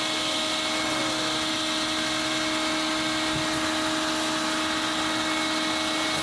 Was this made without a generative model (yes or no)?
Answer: yes